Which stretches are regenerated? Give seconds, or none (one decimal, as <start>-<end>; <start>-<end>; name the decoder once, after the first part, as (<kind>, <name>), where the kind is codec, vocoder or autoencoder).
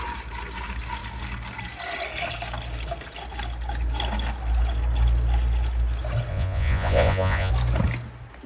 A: 6.3-7.5 (vocoder, Vocos)